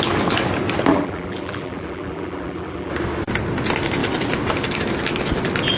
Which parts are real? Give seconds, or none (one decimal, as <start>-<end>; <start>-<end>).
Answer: 0.0-0.9; 2.9-5.8